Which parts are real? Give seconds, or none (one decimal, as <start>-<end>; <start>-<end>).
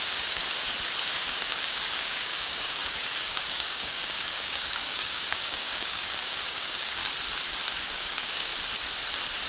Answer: 0.4-1.0; 7.0-7.8; 8.5-9.5